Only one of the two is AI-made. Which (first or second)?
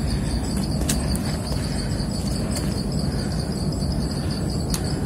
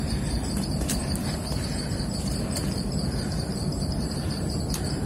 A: second